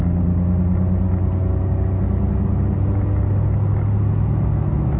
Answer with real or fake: real